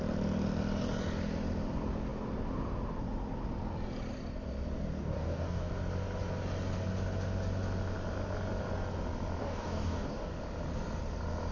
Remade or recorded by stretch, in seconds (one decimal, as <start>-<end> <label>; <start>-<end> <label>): 0.0-5.0 recorded; 5.0-5.7 remade; 5.7-9.4 recorded; 9.4-10.3 remade; 10.3-11.5 recorded